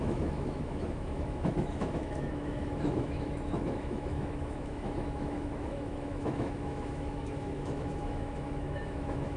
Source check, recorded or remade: remade